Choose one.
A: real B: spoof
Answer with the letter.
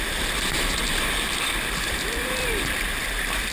B